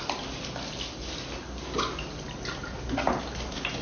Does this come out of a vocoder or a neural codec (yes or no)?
no